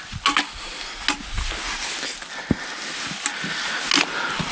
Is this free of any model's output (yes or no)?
yes